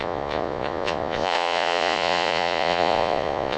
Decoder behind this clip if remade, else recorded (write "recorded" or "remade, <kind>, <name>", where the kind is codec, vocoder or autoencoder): remade, vocoder, Vocos